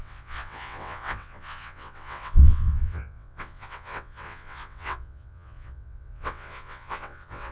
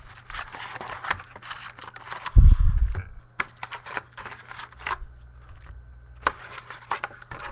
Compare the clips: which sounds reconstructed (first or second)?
first